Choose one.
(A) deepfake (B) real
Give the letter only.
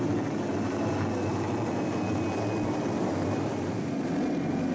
B